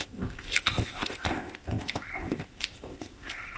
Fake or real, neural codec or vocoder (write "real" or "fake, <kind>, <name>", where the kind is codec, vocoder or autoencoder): fake, codec, ZipCodec